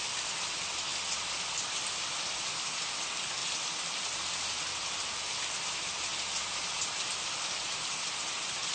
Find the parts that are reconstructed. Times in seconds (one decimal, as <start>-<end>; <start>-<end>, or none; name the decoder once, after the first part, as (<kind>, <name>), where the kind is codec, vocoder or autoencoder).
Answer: none